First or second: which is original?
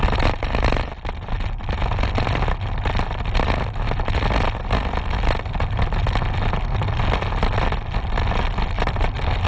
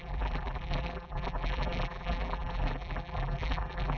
first